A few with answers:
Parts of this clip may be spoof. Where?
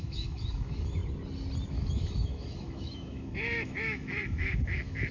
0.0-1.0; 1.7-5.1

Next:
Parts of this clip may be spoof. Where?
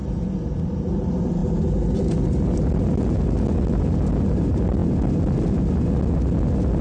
none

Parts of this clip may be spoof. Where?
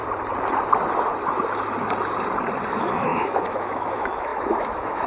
2.7-5.1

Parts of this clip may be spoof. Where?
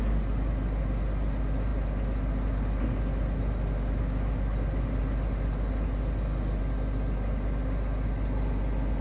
none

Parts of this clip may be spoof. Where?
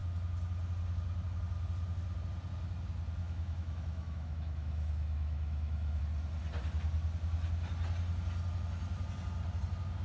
3.2-6.0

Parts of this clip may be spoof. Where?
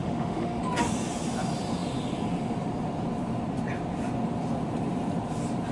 0.0-0.6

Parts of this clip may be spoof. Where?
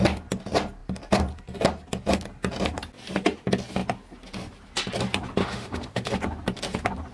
5.4-6.1